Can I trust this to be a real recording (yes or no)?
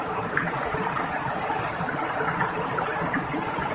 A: no